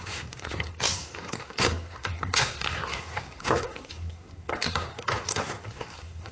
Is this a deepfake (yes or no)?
yes